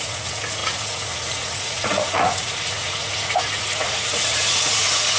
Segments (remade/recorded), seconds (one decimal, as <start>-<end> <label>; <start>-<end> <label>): 0.0-5.2 remade